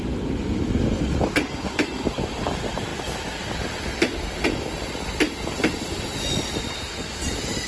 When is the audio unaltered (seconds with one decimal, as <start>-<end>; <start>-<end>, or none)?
0.0-7.7